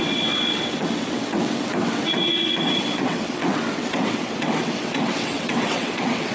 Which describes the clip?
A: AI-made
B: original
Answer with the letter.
A